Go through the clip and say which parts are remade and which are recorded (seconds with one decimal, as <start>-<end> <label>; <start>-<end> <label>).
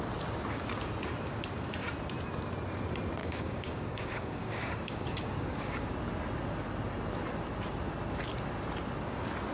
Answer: 0.0-3.2 recorded; 3.2-5.9 remade; 5.9-9.5 recorded